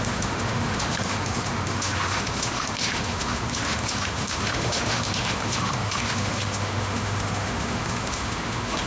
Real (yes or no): no